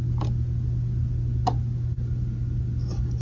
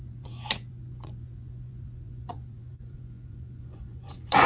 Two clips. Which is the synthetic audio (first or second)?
second